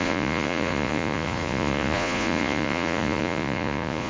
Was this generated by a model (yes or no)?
yes